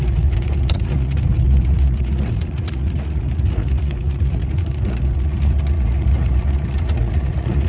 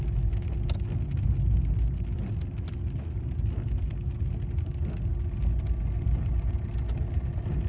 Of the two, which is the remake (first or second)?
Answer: first